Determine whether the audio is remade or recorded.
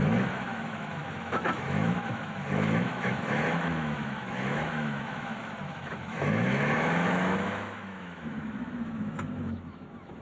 remade